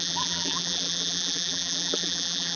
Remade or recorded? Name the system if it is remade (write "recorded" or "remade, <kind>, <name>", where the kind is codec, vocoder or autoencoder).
remade, vocoder, BigVGAN v2